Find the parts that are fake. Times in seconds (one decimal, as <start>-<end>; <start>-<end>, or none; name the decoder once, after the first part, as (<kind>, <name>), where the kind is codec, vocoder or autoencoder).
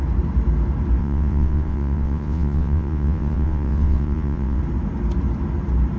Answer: 1.0-4.6 (vocoder, WaveNeXt)